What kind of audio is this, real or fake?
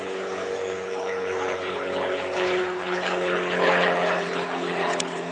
fake